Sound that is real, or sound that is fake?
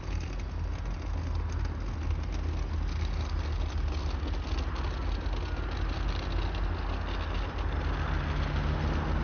real